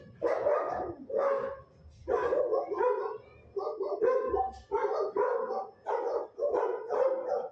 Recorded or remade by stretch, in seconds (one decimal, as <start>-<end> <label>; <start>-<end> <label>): 0.0-7.5 recorded